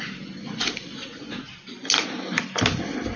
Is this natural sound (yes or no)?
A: yes